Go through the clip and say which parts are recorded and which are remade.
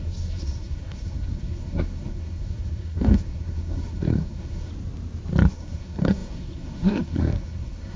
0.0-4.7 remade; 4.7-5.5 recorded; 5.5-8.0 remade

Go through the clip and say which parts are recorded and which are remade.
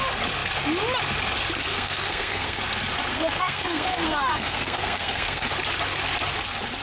0.0-1.7 recorded; 1.7-2.6 remade; 2.6-3.1 recorded; 3.1-5.5 remade; 5.5-6.8 recorded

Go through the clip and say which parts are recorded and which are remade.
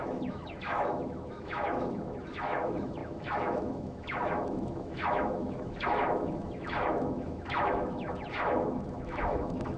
0.0-9.8 remade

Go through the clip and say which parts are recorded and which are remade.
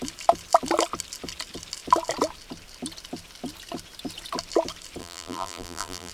0.0-5.0 recorded; 5.0-6.1 remade